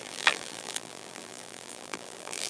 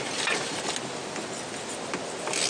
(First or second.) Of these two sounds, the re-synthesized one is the first